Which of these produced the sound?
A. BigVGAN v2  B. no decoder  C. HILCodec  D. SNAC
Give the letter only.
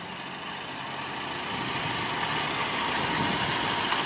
B